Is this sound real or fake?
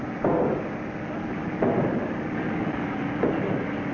real